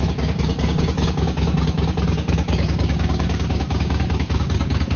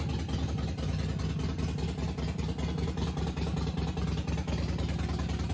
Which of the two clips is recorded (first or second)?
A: second